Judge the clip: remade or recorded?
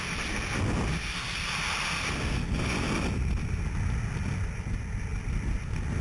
recorded